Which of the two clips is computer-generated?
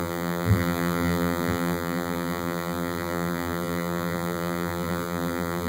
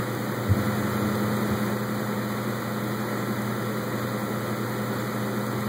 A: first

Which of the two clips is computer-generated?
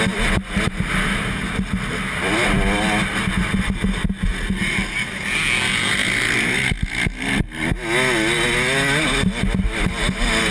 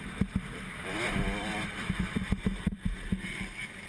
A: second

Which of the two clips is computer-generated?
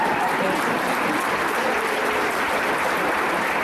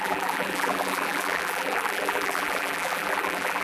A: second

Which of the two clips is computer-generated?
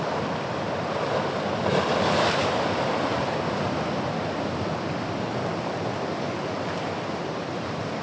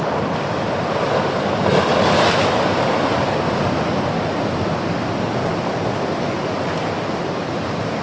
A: first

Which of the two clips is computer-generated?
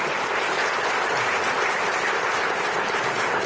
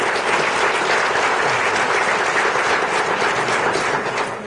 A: first